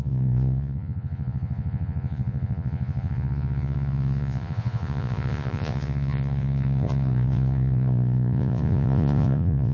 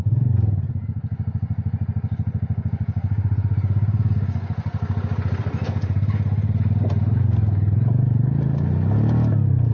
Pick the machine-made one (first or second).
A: first